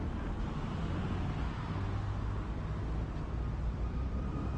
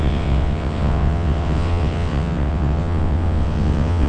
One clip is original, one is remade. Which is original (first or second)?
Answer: first